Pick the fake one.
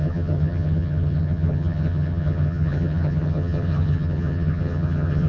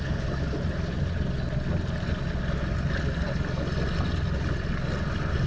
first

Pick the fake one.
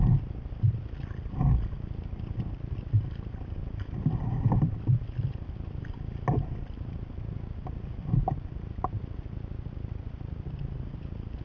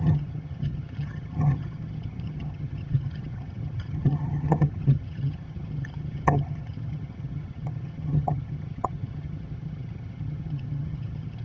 second